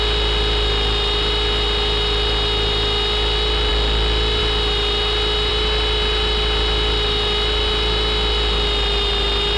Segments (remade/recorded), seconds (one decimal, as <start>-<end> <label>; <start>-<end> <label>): 0.0-9.6 recorded